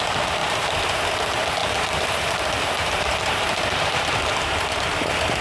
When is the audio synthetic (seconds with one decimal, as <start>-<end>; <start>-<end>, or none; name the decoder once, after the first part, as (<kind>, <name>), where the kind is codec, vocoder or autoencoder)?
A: 0.4-1.0 (vocoder, BigVGAN v2); 1.6-4.8